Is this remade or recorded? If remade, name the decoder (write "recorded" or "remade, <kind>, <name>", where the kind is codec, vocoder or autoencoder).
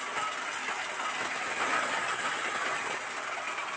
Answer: recorded